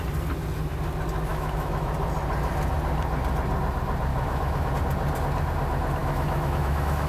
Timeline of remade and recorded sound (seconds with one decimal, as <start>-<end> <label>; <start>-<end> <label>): 0.0-1.3 recorded; 1.3-1.9 remade; 1.9-4.1 recorded; 4.1-4.7 remade; 4.7-6.0 recorded; 6.0-7.1 remade